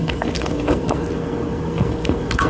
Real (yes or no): no